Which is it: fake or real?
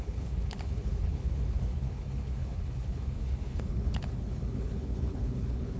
fake